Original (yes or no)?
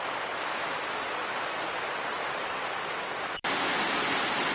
no